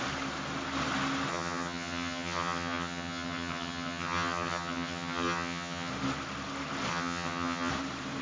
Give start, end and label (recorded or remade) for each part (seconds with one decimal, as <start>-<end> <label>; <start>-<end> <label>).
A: 0.0-1.3 recorded; 1.3-5.9 remade; 5.9-6.9 recorded; 6.9-7.7 remade; 7.7-8.2 recorded

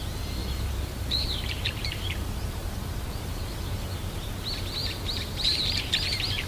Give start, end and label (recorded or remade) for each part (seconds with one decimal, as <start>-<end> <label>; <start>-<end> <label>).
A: 0.0-0.4 recorded; 0.4-4.3 remade; 4.3-4.8 recorded; 4.8-5.8 remade; 5.8-6.5 recorded

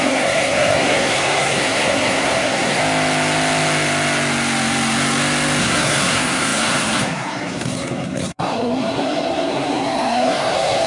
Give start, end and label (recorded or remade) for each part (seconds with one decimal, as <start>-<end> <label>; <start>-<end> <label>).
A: 0.0-2.8 remade; 2.8-5.6 recorded; 5.6-10.9 remade